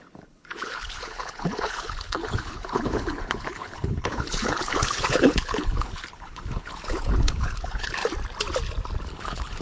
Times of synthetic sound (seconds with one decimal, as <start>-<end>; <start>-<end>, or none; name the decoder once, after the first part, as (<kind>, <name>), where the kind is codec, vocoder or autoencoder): 0.0-8.0 (codec, HILCodec); 9.1-9.6